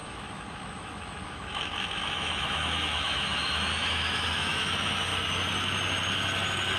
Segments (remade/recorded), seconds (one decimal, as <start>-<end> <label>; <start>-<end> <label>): 0.0-5.1 remade; 5.1-6.8 recorded